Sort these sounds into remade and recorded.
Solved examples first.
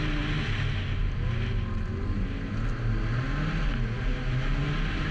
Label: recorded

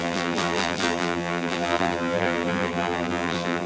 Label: remade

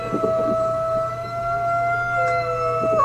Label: recorded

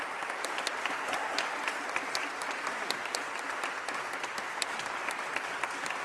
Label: remade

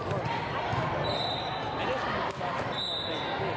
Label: recorded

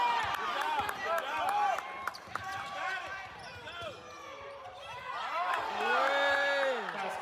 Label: recorded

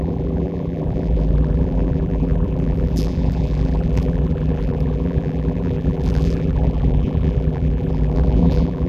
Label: remade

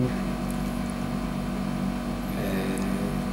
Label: recorded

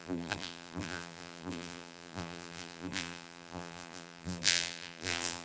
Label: remade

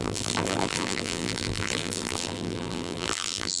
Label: remade